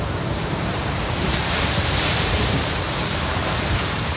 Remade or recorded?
remade